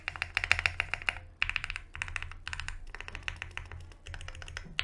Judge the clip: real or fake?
real